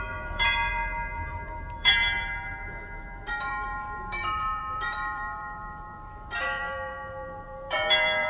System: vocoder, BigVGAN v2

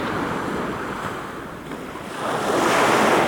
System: none